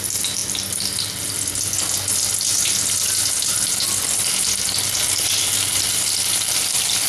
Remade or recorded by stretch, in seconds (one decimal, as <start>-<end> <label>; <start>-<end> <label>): 0.0-7.1 recorded